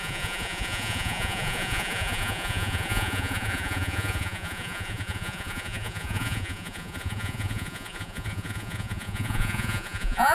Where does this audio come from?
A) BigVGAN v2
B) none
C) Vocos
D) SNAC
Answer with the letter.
C